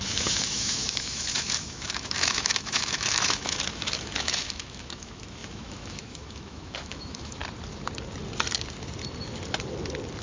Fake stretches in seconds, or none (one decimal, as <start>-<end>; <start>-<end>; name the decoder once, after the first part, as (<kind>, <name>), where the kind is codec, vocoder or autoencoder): 0.0-7.4 (autoencoder, DAC-VAE)